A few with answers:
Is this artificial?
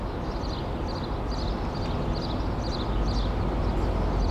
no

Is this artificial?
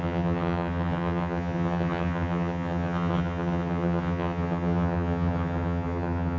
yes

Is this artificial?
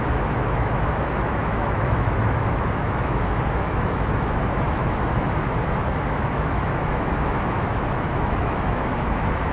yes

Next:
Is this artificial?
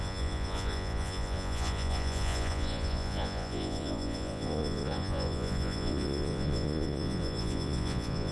yes